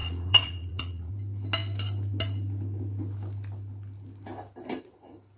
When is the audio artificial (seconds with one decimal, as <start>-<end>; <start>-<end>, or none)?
0.0-1.1